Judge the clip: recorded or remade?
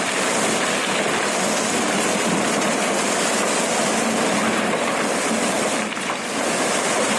recorded